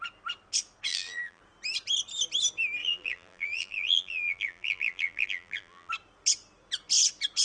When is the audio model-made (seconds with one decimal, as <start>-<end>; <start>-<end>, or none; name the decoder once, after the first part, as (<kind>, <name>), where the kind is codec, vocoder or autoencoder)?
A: 0.9-1.4 (vocoder, BigVGAN v2); 2.8-5.9